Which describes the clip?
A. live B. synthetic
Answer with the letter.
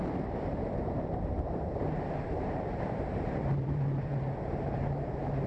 B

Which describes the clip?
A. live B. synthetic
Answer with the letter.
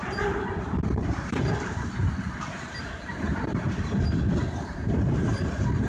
B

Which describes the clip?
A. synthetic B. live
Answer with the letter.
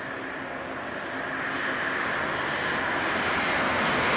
B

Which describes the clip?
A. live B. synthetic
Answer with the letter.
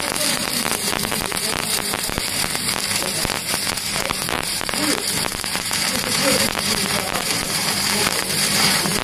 B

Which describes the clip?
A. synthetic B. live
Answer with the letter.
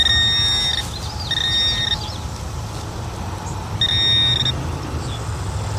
B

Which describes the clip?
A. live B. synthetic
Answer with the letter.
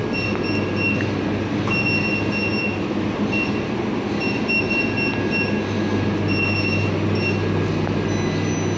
A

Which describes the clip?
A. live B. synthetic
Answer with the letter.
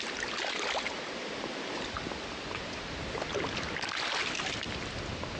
A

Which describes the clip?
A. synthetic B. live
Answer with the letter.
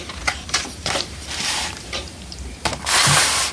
A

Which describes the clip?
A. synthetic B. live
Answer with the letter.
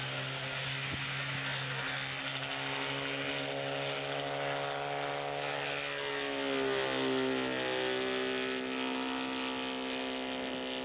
B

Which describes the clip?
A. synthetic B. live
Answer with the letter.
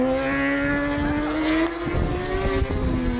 B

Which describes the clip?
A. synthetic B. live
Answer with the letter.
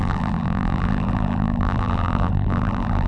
A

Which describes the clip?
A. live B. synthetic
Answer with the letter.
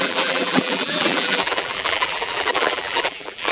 B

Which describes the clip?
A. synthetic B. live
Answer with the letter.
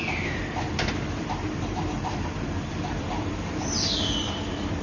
A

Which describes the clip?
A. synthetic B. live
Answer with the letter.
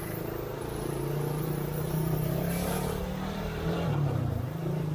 A